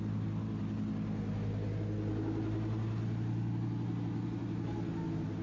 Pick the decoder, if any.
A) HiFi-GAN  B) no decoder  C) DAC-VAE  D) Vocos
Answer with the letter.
B